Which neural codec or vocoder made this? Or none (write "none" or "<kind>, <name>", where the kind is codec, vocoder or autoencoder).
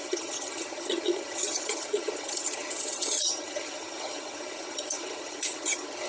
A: vocoder, HiFi-GAN